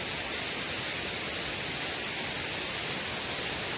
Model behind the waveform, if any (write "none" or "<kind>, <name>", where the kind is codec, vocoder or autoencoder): none